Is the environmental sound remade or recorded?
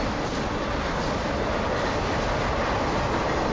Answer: recorded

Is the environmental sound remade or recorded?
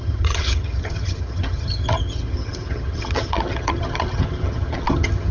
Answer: remade